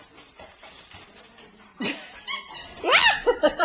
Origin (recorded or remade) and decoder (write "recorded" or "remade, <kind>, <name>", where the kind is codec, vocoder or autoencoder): remade, vocoder, BigVGAN v2